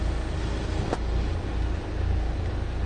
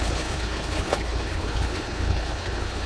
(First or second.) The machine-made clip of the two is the second